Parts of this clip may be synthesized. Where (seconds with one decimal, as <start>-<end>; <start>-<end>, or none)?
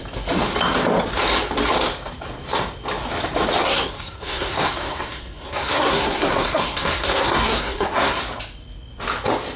3.6-8.2